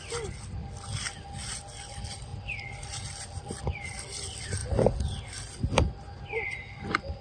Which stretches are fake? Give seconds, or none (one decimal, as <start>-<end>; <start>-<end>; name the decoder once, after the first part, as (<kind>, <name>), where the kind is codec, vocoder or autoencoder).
0.0-0.6 (vocoder, BigVGAN v2); 1.9-4.6; 5.3-7.2